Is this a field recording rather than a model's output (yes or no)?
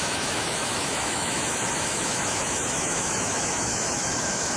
no